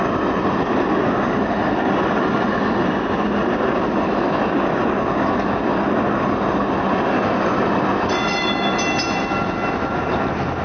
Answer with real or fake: real